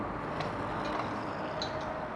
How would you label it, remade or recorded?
recorded